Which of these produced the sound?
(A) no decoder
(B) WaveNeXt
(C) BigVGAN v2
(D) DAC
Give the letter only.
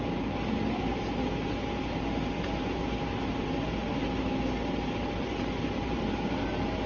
A